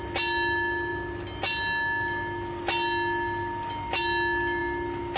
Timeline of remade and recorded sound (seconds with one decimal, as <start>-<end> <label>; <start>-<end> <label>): 0.0-5.2 recorded